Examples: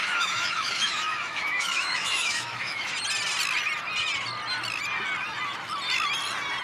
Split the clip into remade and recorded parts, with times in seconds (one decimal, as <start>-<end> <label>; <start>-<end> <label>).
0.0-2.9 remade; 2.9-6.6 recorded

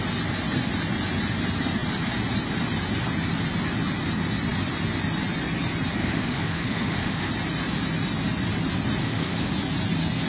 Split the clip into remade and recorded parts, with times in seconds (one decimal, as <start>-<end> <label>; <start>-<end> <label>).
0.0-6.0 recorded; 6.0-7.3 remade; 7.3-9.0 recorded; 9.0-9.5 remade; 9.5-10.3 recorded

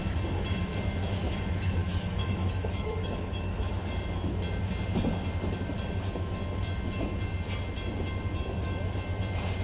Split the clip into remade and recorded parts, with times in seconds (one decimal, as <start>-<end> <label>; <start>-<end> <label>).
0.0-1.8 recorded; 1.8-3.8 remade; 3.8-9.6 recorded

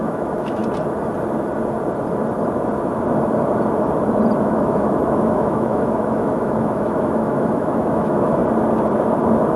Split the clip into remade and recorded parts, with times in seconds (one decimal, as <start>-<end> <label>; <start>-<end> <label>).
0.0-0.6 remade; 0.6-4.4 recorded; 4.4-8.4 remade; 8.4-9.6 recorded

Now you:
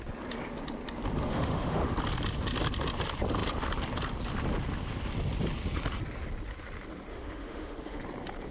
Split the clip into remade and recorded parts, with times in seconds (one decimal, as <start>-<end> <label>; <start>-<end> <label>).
0.0-1.3 recorded; 1.3-1.8 remade; 1.8-7.1 recorded; 7.1-8.0 remade; 8.0-8.5 recorded

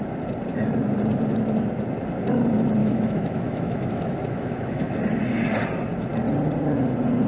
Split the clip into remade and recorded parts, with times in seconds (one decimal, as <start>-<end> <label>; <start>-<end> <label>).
0.0-2.8 recorded; 2.8-5.0 remade; 5.0-7.3 recorded

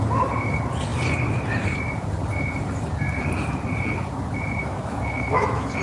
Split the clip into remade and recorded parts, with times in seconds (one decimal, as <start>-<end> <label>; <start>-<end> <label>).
0.0-4.6 recorded; 4.6-5.8 remade

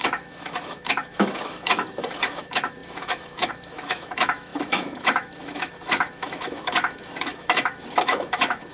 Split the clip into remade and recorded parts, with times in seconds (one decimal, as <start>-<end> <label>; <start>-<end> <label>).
0.0-8.7 remade